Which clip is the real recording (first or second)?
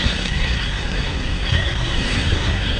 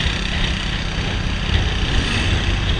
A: second